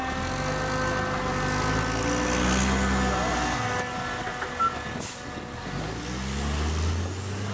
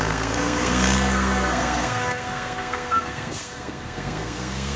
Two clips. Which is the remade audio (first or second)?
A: second